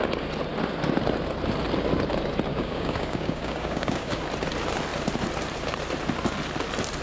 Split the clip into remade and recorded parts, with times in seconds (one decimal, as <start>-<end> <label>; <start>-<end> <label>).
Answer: 0.0-2.5 recorded; 2.5-4.2 remade; 4.2-7.0 recorded